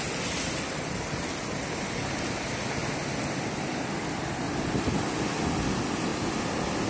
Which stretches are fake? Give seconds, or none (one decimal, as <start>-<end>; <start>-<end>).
none